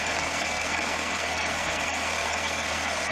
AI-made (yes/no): yes